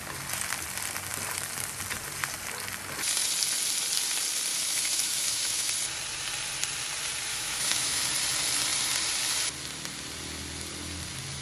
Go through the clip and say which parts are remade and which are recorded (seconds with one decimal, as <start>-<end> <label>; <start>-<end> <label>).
0.0-4.5 recorded; 4.5-5.7 remade; 5.7-7.3 recorded; 7.3-8.0 remade; 8.0-11.4 recorded